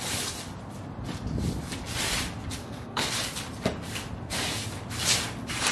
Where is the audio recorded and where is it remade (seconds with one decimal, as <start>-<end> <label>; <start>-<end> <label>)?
0.0-2.6 recorded; 2.6-3.1 remade; 3.1-5.7 recorded